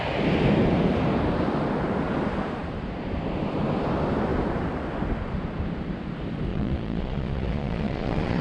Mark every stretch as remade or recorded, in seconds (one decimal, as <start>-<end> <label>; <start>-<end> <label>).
0.0-6.5 recorded; 6.5-8.4 remade